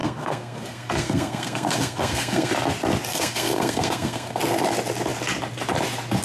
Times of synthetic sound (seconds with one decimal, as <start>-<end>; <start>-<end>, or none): 0.0-2.5; 3.1-4.4